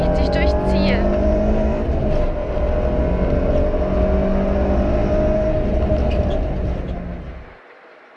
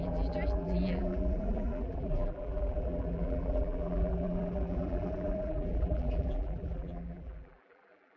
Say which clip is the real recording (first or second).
first